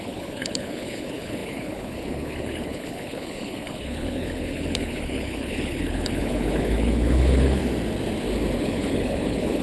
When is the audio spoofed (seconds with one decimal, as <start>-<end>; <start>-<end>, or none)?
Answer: 0.0-7.6; 8.6-9.6